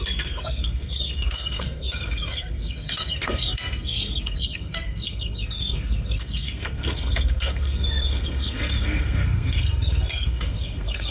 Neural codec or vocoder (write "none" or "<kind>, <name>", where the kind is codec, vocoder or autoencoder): codec, SNAC